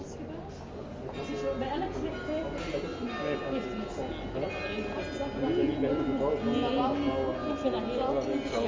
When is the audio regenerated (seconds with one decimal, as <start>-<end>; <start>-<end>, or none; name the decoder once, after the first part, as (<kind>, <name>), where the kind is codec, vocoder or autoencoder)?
none